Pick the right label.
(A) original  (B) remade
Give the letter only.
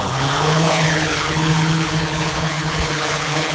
B